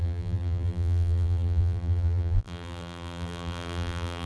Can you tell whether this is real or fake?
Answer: fake